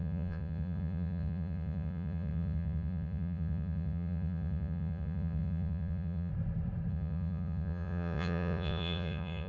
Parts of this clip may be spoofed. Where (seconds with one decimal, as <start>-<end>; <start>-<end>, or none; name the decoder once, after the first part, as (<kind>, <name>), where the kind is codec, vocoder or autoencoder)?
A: 0.0-6.3 (vocoder, Vocos); 6.9-9.5